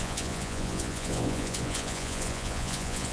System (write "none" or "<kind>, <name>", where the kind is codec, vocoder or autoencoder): vocoder, Vocos